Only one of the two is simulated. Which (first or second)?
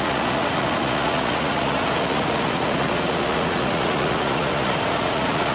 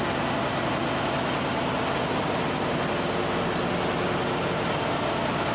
first